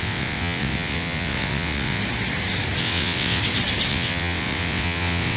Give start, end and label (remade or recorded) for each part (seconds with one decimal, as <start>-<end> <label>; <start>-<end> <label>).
0.0-2.0 remade; 2.0-2.8 recorded; 2.8-3.4 remade; 3.4-3.9 recorded; 3.9-5.4 remade

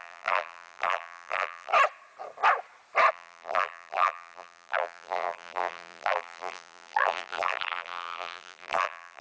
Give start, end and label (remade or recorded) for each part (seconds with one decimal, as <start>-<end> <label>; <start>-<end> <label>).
0.0-1.7 remade; 1.7-3.1 recorded; 3.1-9.2 remade